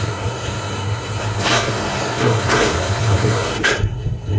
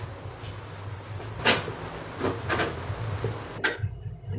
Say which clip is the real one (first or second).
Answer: second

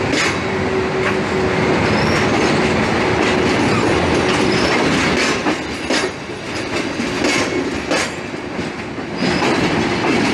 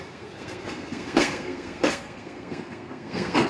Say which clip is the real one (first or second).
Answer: first